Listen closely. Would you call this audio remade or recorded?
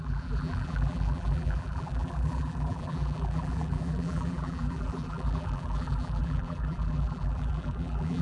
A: remade